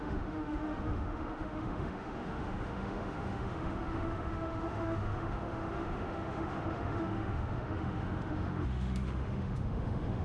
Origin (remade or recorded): remade